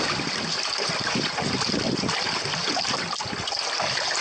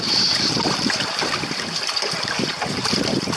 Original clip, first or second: first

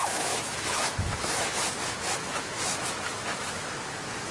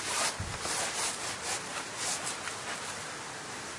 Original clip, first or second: second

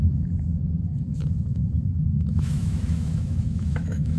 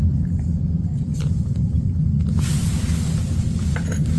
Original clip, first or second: second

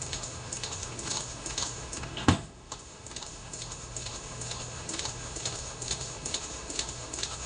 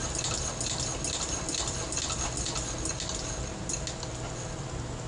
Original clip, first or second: second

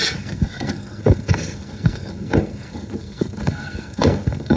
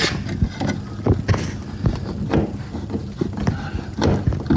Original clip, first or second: second